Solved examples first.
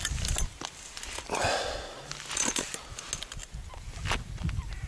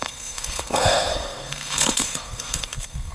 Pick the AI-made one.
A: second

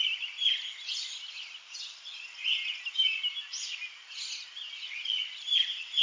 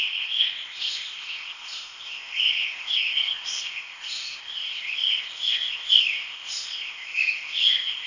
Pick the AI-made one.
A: second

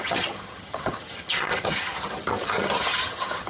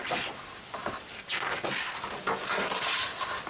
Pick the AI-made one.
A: first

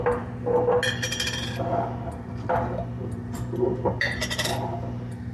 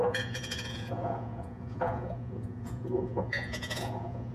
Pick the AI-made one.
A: second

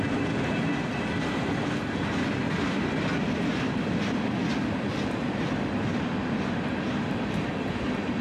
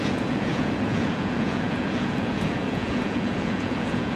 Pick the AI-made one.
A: second